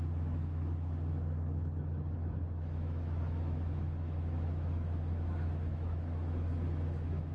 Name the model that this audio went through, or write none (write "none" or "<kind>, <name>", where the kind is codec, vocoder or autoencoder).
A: autoencoder, DAC-VAE